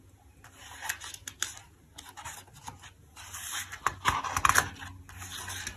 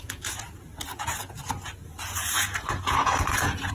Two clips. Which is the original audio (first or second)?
first